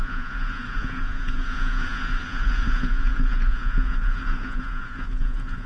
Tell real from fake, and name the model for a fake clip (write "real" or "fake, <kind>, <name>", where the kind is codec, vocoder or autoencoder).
fake, vocoder, Vocos